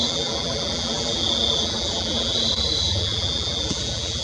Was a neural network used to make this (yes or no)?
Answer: yes